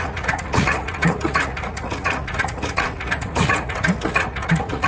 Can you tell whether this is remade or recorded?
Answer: remade